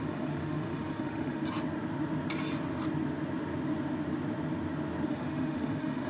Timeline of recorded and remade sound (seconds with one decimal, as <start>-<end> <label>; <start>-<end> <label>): 0.0-1.4 remade; 1.4-5.1 recorded; 5.1-6.1 remade

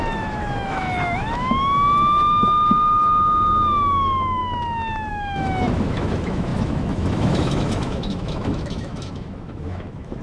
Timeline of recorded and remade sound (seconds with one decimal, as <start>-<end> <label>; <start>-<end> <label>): 0.0-4.4 remade; 4.4-5.1 recorded; 5.1-10.2 remade

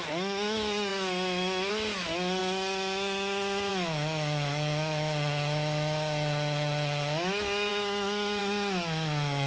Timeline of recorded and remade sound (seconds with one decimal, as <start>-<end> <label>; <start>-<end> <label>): 0.0-9.5 remade

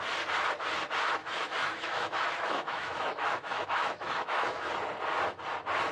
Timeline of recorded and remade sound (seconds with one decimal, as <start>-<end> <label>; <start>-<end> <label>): 0.0-1.2 recorded; 1.2-4.7 remade; 4.7-5.9 recorded

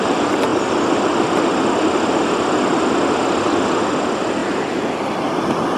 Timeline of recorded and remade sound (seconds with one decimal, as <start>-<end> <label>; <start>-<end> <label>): 0.0-5.8 recorded